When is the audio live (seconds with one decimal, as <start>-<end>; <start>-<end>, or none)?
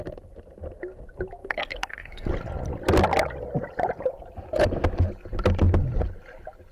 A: 0.0-1.4; 2.3-6.7